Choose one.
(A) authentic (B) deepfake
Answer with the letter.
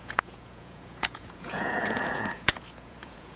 B